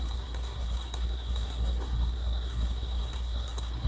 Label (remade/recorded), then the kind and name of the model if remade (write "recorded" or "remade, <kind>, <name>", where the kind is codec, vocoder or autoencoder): remade, codec, SNAC